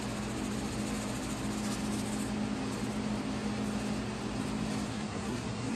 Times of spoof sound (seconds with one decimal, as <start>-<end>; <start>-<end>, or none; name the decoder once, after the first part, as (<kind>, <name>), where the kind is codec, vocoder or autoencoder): 4.9-5.8 (codec, SNAC)